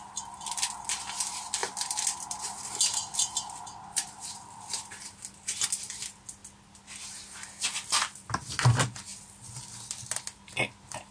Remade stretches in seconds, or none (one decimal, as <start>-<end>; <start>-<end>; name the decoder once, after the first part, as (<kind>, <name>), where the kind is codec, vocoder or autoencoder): 1.6-4.9 (vocoder, BigVGAN v2)